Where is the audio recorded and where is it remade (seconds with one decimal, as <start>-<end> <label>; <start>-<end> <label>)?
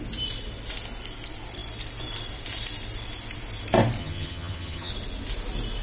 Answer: 0.0-4.0 recorded; 4.0-4.9 remade; 4.9-5.8 recorded